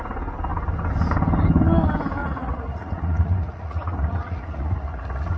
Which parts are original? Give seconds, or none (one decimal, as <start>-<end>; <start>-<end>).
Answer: 0.0-2.2